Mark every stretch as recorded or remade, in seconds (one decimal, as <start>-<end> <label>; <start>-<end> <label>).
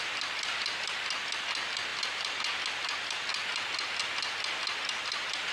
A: 0.0-1.9 recorded; 1.9-2.4 remade; 2.4-5.5 recorded